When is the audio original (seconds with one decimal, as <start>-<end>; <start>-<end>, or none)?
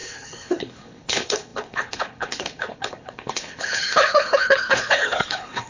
none